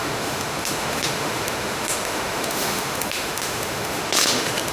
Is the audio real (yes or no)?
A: no